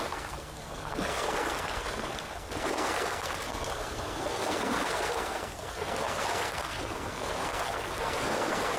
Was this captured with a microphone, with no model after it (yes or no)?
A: no